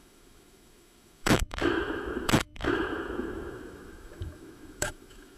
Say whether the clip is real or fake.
fake